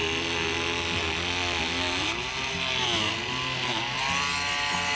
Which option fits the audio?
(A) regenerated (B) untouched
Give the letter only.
B